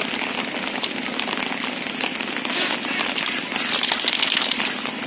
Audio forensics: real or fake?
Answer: real